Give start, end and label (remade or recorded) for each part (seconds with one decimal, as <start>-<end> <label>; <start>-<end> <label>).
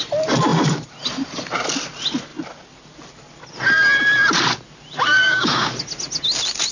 0.0-5.2 recorded; 5.2-5.7 remade; 5.7-6.7 recorded